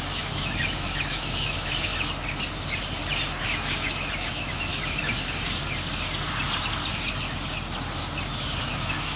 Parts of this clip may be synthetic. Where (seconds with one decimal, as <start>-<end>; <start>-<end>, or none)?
0.0-1.9; 3.4-4.7; 8.6-9.2